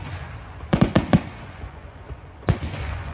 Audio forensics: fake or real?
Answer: fake